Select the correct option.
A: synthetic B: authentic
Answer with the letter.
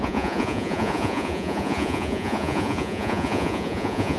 A